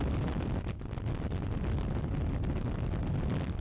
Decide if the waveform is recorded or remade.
recorded